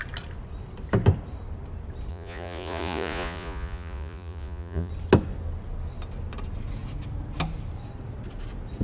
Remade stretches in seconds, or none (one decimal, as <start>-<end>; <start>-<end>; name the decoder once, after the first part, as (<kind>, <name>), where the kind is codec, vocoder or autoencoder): 2.1-4.9 (vocoder, Vocos)

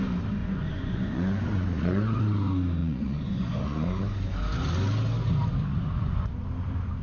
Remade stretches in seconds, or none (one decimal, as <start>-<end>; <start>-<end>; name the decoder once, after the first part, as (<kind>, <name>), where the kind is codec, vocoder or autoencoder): 0.4-2.2 (vocoder, Vocos); 2.8-4.0; 5.7-6.3

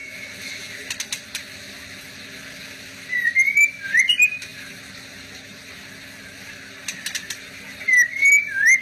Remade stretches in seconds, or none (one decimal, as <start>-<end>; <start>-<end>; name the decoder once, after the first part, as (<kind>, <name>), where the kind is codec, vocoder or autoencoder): none

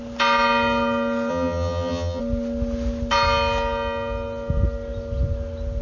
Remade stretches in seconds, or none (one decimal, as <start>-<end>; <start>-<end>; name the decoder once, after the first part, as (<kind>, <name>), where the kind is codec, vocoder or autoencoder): 1.3-2.2 (vocoder, HiFi-GAN)

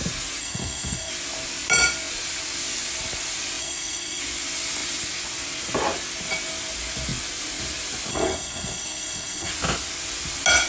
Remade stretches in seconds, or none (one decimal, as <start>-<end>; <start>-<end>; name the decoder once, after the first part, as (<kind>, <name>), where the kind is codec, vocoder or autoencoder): 0.4-1.1 (codec, SNAC); 3.6-4.2; 8.1-9.5

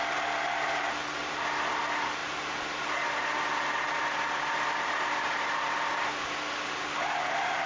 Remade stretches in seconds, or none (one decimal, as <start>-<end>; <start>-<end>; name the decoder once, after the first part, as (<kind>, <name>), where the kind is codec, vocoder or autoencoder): none